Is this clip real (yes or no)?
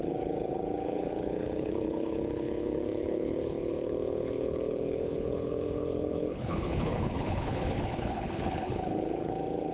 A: no